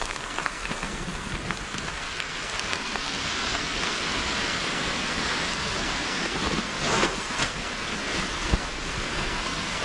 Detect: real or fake fake